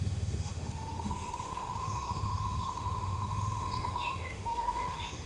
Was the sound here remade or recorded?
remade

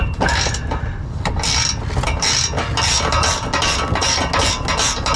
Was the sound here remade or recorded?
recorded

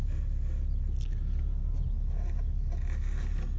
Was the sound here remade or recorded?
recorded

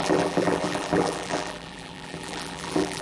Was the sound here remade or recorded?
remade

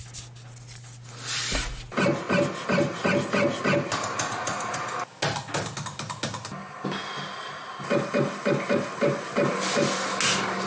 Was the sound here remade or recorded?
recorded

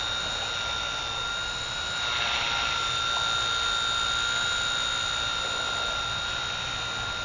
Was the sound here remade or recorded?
recorded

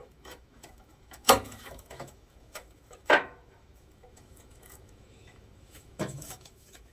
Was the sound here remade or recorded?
remade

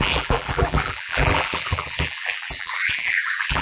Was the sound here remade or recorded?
remade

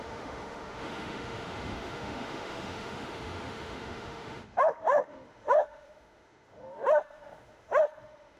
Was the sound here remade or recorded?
remade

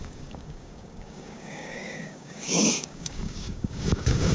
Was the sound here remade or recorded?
remade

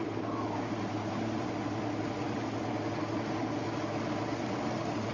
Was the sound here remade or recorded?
recorded